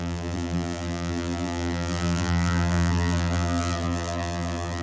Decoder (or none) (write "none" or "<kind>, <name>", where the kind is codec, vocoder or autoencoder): vocoder, BigVGAN v2